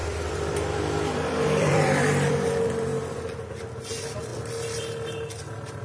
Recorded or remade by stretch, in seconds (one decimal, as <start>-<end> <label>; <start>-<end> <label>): 0.0-2.3 remade; 2.3-5.8 recorded

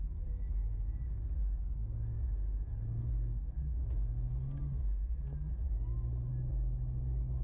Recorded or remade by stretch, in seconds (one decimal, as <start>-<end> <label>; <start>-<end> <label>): 0.0-7.4 recorded

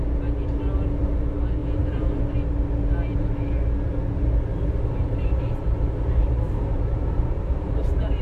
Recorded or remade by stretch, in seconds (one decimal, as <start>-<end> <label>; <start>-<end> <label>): 0.0-1.6 recorded; 1.6-2.2 remade; 2.2-4.5 recorded; 4.5-8.2 remade